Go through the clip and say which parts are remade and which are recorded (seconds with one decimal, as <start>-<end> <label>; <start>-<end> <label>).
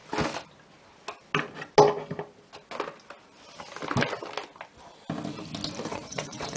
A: 0.0-5.9 recorded; 5.9-6.6 remade